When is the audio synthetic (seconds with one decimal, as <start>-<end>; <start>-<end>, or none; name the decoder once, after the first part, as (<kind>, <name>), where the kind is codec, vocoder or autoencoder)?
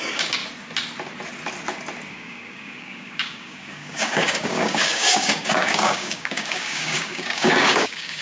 0.0-0.4 (codec, DAC); 2.1-8.2